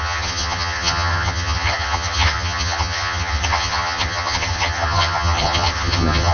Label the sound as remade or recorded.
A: remade